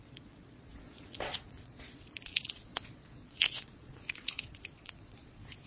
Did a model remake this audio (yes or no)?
yes